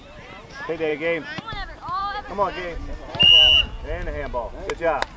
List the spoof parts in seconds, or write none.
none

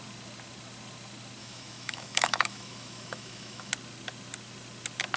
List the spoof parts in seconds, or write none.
1.4-3.7 (autoencoder, DAC-VAE)

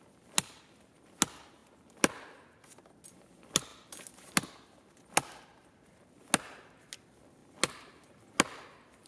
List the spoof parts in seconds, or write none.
none

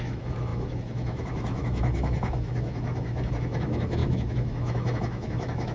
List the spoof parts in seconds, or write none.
0.0-5.7 (autoencoder, DAC-VAE)

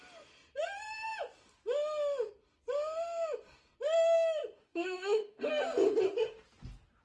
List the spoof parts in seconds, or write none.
4.6-5.5 (autoencoder, DAC-VAE)

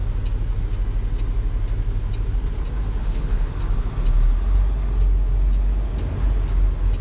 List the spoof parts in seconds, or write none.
3.0-3.5 (autoencoder, DAC-VAE)

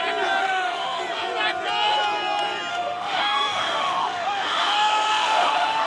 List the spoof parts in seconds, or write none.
0.4-1.0 (autoencoder, DAC-VAE); 2.7-5.9

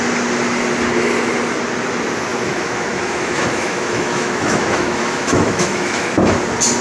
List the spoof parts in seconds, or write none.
2.3-6.1 (autoencoder, DAC-VAE)